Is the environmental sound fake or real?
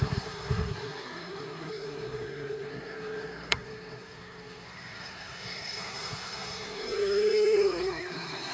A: fake